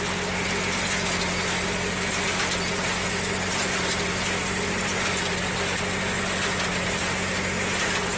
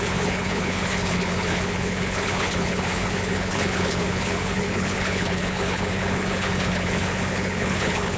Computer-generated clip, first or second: second